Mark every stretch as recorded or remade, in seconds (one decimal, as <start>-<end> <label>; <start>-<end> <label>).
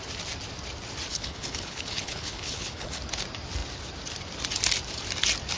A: 0.0-1.1 recorded; 1.1-3.0 remade; 3.0-5.6 recorded